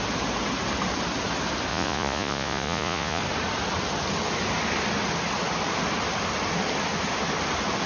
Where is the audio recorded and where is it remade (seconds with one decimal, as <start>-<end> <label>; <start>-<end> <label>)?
0.0-1.7 recorded; 1.7-3.2 remade; 3.2-7.9 recorded

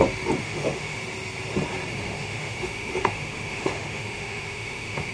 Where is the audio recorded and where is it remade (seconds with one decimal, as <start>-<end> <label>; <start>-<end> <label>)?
0.0-0.4 recorded; 0.4-1.0 remade; 1.0-1.9 recorded; 1.9-5.1 remade

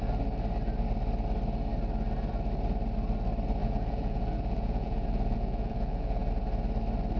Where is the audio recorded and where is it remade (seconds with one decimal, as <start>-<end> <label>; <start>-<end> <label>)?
0.0-3.6 recorded; 3.6-6.3 remade; 6.3-7.2 recorded